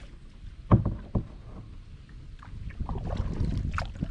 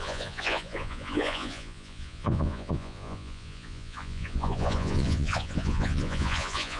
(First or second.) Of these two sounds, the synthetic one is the second